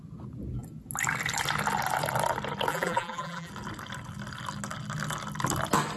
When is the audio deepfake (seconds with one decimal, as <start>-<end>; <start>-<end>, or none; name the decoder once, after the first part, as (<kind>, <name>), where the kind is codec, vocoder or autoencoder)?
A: 2.7-3.5 (vocoder, BigVGAN v2)